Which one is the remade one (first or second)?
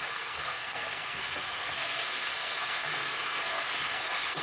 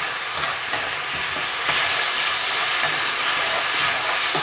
first